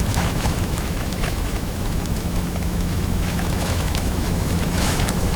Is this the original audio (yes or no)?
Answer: no